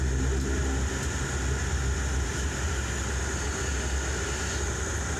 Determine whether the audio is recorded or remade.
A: recorded